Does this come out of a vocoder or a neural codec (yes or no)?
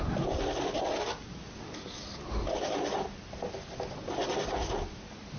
no